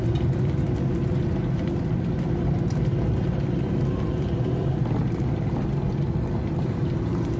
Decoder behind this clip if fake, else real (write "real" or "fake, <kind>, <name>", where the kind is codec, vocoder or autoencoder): real